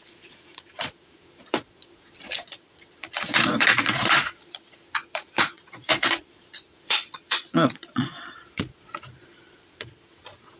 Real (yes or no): no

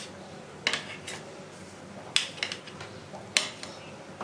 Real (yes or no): yes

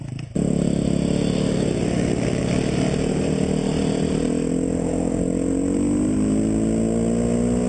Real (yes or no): yes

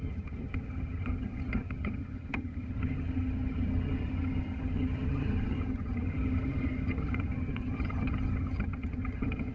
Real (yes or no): no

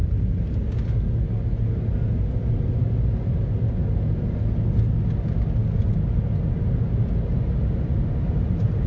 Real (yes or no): yes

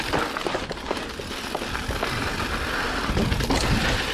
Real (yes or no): yes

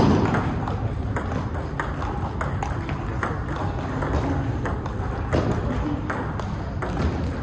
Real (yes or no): yes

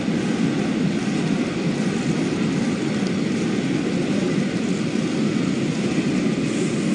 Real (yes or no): yes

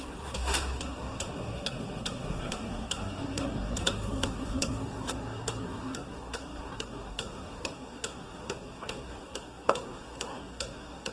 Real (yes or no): no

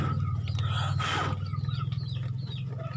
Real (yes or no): yes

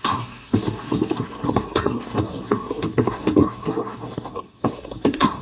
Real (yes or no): no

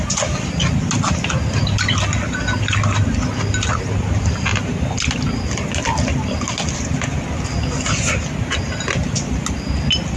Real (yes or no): yes